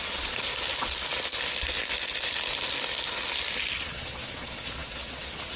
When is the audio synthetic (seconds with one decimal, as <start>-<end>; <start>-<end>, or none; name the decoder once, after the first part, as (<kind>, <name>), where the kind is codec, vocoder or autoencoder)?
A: 0.0-0.4 (vocoder, Vocos); 3.8-5.6